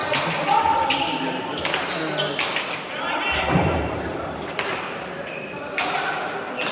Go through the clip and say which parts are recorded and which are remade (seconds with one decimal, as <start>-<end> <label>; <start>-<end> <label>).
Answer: 0.0-6.7 recorded